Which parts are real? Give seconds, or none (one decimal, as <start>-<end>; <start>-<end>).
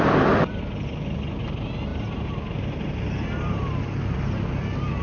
0.0-5.0